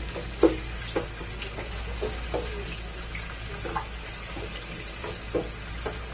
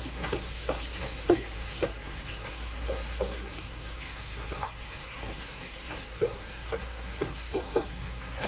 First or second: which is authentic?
first